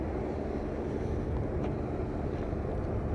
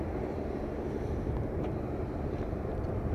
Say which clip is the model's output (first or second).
second